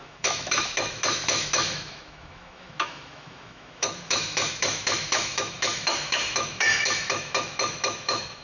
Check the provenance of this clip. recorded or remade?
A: remade